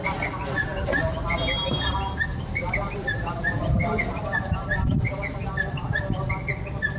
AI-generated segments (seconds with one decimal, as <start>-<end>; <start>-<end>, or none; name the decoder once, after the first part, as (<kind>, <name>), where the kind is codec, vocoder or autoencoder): 2.3-5.0 (vocoder, BigVGAN v2); 5.4-5.9